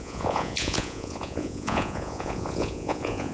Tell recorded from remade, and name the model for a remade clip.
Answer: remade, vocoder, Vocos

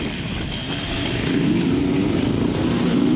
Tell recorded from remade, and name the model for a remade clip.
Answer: recorded